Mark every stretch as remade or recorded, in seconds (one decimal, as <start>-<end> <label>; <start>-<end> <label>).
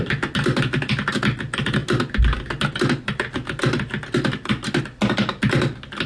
0.0-6.1 recorded